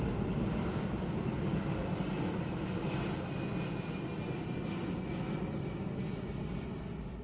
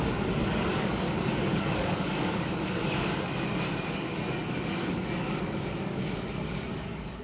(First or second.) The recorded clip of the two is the first